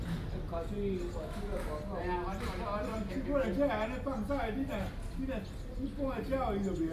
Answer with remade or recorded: recorded